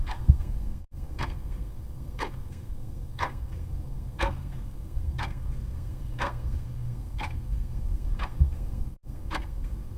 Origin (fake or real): fake